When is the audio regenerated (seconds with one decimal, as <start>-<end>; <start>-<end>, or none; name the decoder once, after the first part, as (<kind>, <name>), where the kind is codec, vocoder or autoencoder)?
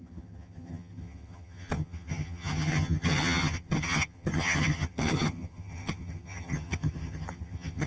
0.0-7.9 (vocoder, HiFi-GAN)